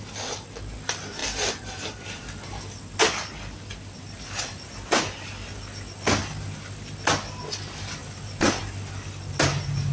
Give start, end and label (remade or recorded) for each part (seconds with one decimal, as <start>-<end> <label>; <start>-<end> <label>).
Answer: 0.0-9.9 recorded